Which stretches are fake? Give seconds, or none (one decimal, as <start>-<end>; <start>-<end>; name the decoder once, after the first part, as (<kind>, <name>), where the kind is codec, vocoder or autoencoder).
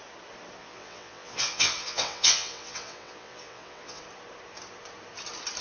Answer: 0.6-4.0 (vocoder, WaveNeXt)